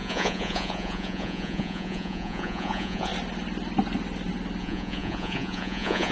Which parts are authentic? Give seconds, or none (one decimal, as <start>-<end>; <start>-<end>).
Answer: 3.1-4.6